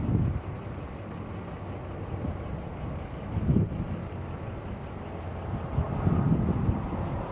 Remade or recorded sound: recorded